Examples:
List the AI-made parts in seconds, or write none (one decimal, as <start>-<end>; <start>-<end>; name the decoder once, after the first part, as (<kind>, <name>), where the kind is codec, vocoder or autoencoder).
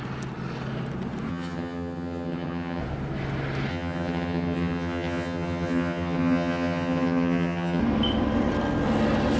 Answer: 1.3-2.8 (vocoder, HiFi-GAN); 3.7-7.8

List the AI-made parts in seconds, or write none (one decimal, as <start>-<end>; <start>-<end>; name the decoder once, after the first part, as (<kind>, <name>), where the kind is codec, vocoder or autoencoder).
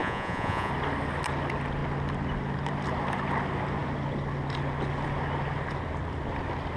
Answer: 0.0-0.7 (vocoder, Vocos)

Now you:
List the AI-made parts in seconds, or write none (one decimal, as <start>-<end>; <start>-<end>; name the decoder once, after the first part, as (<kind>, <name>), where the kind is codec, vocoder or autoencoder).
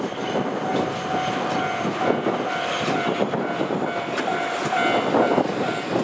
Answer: none